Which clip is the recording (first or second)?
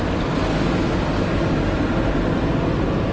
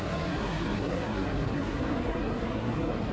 first